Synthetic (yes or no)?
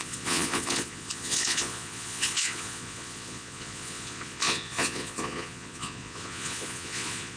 yes